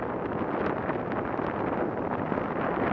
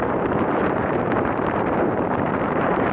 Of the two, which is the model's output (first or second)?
second